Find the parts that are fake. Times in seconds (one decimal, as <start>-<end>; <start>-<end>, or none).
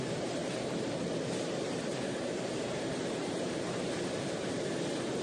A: 0.0-5.2